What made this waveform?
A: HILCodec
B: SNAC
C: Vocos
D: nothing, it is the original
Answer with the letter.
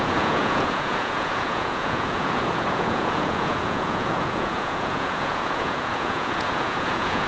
C